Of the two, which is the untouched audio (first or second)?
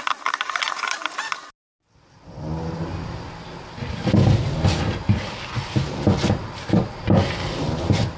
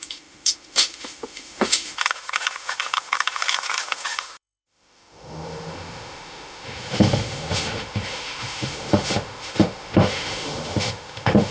first